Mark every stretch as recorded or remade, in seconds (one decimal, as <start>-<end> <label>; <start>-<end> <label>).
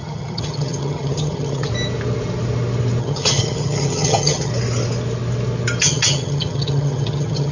0.0-1.7 remade; 1.7-3.0 recorded; 3.0-4.5 remade; 4.5-5.8 recorded; 5.8-7.5 remade